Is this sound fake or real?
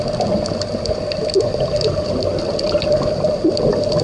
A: real